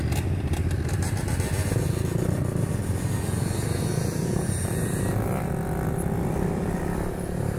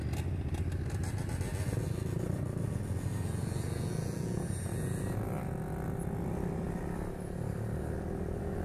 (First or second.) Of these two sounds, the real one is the second